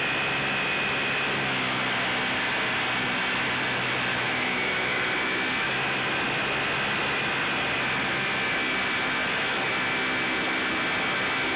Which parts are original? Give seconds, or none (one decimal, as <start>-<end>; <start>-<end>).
0.0-4.1; 5.0-11.6